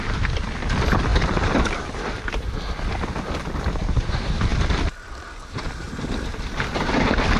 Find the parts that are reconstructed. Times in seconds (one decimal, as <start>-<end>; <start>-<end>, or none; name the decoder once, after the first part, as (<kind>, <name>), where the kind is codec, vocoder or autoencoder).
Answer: 0.0-7.4 (vocoder, BigVGAN v2)